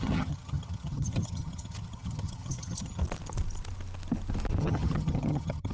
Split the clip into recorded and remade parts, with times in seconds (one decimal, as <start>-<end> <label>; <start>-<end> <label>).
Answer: 0.0-3.0 remade; 3.0-4.6 recorded; 4.6-5.7 remade